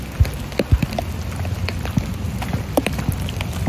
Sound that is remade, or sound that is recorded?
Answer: recorded